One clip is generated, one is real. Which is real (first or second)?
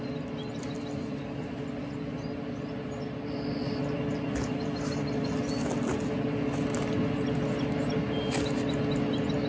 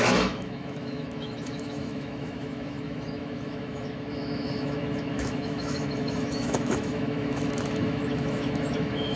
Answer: first